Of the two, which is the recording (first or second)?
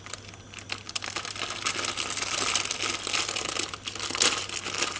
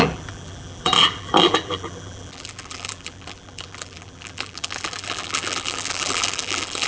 first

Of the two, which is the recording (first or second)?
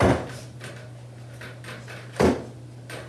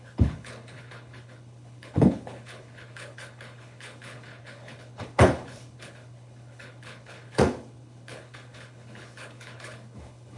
first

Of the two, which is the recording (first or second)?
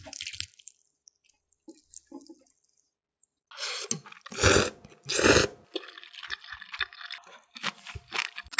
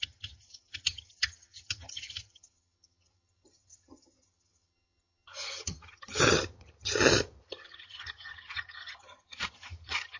first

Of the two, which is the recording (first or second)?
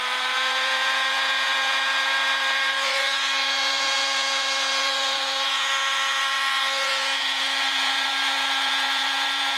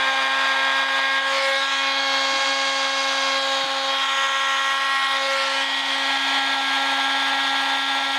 second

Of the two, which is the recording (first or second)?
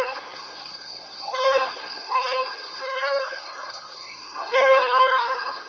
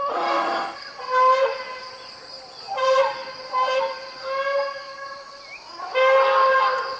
second